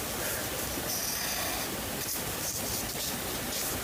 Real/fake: real